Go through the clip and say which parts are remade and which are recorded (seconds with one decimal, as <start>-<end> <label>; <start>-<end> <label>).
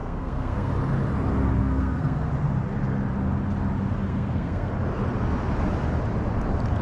0.0-0.7 remade; 0.7-1.6 recorded; 1.6-2.3 remade; 2.3-4.1 recorded; 4.1-4.7 remade; 4.7-6.8 recorded